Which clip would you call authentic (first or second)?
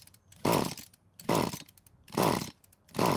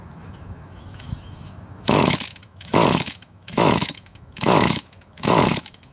first